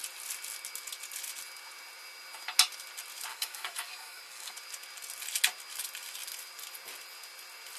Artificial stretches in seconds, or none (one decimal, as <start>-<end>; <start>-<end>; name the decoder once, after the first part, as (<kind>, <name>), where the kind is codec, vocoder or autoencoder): 3.3-4.5 (codec, DAC)